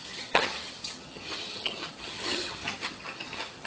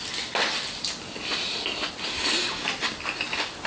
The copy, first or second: first